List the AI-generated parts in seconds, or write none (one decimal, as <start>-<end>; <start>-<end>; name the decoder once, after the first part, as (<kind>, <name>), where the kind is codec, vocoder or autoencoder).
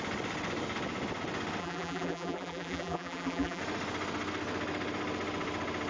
1.6-3.6 (vocoder, BigVGAN v2)